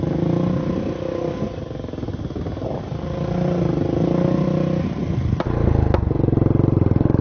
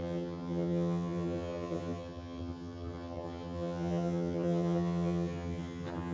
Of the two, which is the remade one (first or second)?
second